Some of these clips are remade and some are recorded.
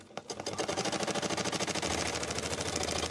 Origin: recorded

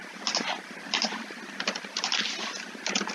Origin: recorded